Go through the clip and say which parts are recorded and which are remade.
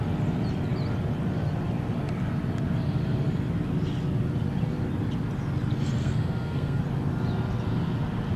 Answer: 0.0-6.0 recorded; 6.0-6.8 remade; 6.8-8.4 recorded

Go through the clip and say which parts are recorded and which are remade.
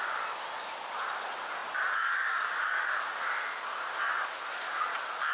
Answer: 0.0-5.3 recorded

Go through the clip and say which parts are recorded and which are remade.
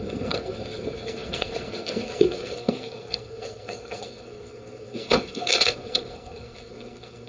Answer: 0.0-7.3 remade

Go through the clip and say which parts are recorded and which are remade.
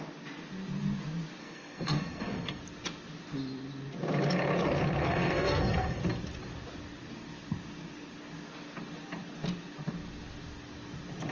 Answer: 0.0-1.4 recorded; 1.4-2.6 remade; 2.6-5.0 recorded; 5.0-6.0 remade; 6.0-11.3 recorded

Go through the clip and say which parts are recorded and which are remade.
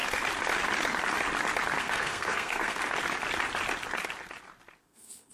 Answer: 0.0-1.8 recorded; 1.8-2.8 remade; 2.8-4.8 recorded; 4.8-5.3 remade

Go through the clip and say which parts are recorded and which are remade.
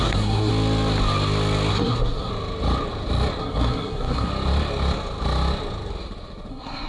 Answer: 0.0-0.5 remade; 0.5-1.7 recorded; 1.7-2.3 remade; 2.3-3.4 recorded; 3.4-4.3 remade; 4.3-6.5 recorded; 6.5-6.9 remade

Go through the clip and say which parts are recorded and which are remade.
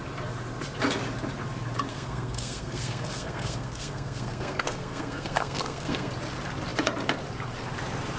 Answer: 0.0-1.9 recorded; 1.9-6.1 remade; 6.1-8.2 recorded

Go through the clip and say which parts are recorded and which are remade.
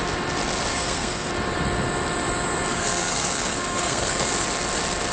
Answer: 0.0-0.7 recorded; 0.7-1.3 remade; 1.3-2.7 recorded; 2.7-4.3 remade; 4.3-5.1 recorded